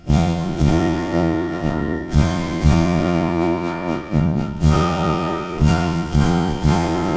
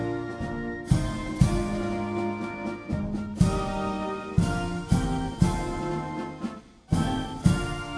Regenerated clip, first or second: first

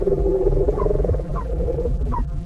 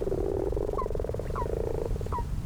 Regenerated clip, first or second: first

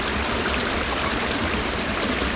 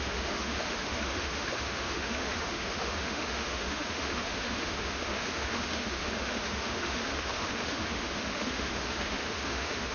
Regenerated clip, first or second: second